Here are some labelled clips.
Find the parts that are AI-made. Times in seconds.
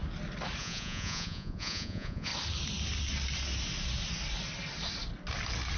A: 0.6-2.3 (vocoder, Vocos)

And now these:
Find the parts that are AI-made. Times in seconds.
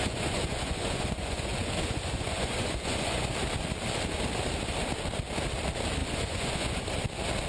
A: 0.0-3.3 (vocoder, Vocos); 6.0-6.8